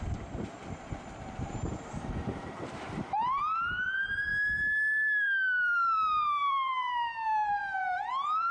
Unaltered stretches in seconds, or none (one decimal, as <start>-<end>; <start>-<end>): 4.3-5.2